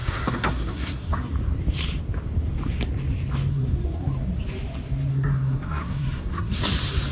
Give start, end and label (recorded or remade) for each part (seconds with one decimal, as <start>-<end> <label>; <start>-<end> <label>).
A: 0.0-1.3 remade; 1.3-3.5 recorded; 3.5-4.1 remade; 4.1-5.1 recorded; 5.1-6.6 remade; 6.6-7.1 recorded